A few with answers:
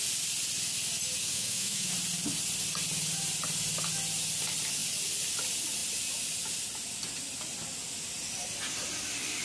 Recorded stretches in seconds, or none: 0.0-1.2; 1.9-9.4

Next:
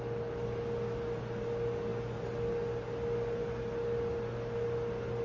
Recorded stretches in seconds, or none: 0.0-5.2

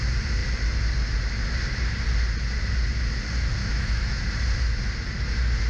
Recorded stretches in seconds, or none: 0.0-3.6; 4.2-5.7

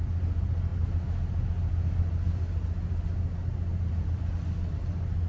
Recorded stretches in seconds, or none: 0.0-5.3